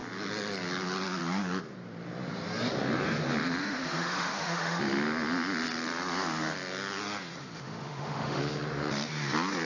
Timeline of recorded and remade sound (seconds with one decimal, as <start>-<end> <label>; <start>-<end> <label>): 0.0-3.6 recorded; 3.6-4.8 remade; 4.8-7.4 recorded; 7.4-8.4 remade; 8.4-9.6 recorded